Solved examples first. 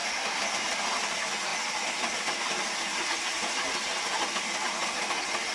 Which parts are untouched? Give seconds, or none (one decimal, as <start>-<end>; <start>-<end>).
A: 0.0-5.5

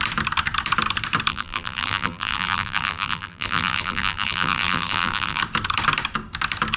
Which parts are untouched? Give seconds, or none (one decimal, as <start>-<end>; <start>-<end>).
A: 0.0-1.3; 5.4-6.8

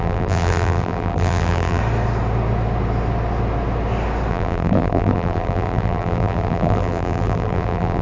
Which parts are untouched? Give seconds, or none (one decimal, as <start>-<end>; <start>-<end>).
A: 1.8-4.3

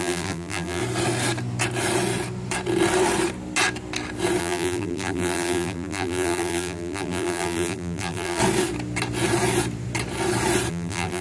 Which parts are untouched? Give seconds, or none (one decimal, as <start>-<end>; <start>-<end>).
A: 0.8-4.4; 8.4-10.7

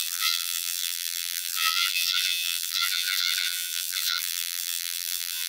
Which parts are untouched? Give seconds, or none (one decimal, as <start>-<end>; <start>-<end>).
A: none

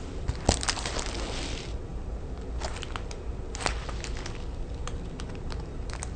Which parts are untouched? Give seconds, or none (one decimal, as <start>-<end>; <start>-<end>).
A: 0.0-6.2

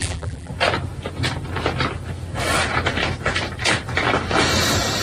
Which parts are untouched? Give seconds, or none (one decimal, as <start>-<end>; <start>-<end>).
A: 0.5-5.0

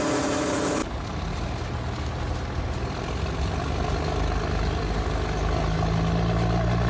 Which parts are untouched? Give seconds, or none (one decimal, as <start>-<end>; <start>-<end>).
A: 0.0-6.9